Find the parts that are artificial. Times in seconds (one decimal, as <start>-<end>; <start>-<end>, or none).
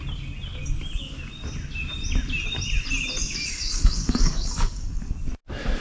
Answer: 3.2-5.1